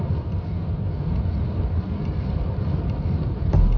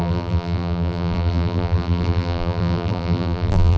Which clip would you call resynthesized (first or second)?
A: second